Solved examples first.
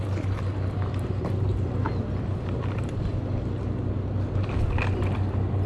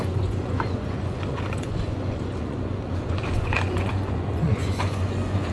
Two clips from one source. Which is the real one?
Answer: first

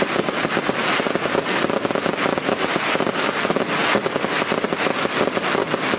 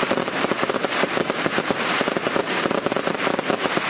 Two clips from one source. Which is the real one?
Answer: first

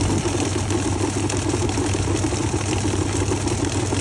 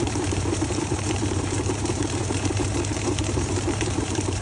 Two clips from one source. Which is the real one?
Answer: first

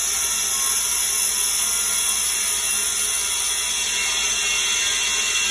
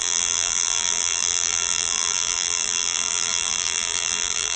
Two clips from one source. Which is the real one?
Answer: first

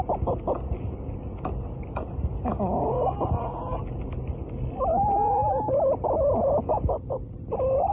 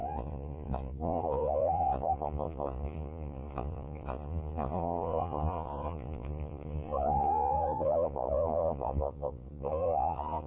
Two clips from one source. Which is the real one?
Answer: first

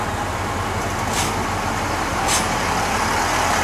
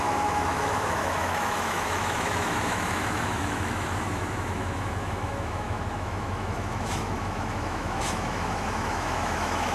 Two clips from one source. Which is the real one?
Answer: first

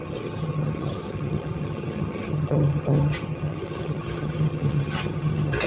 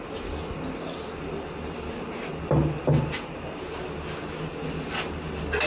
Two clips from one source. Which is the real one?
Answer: second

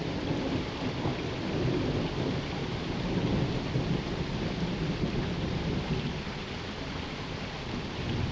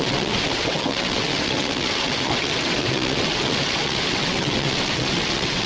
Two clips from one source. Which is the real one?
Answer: first